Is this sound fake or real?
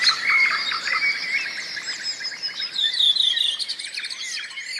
real